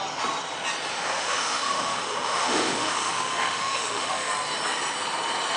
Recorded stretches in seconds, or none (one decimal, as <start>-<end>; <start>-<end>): 0.0-0.9; 4.3-5.6